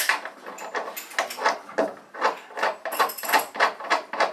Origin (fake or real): real